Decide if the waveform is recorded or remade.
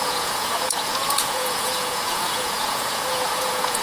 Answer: remade